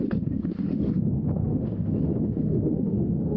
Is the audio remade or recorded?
remade